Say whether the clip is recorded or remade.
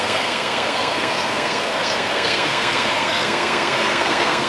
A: remade